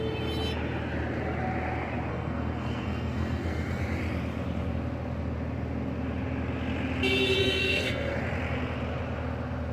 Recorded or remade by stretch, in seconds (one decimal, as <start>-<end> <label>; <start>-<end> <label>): 0.0-2.1 recorded; 2.1-3.8 remade; 3.8-7.4 recorded; 7.4-8.2 remade; 8.2-9.7 recorded